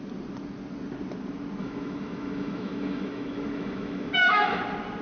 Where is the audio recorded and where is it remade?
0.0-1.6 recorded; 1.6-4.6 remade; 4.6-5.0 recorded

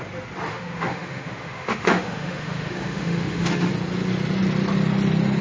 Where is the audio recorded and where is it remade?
0.0-0.5 recorded; 0.5-3.7 remade; 3.7-5.4 recorded